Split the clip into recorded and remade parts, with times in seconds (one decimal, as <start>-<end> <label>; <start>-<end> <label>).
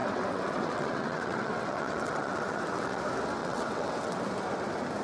0.0-3.0 remade; 3.0-3.4 recorded; 3.4-4.2 remade; 4.2-5.0 recorded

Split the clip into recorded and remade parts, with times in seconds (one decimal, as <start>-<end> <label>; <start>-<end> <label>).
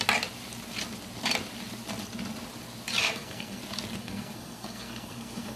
0.0-3.0 recorded; 3.0-3.6 remade; 3.6-4.0 recorded; 4.0-5.6 remade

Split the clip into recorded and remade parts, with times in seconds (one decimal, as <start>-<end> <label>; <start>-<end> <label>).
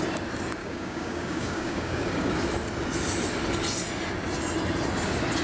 0.0-0.6 recorded; 0.6-2.3 remade; 2.3-5.4 recorded